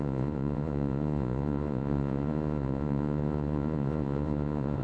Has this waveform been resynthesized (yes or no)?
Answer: yes